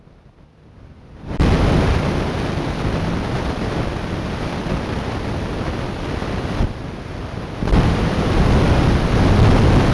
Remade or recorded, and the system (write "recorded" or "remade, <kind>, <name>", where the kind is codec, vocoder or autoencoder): recorded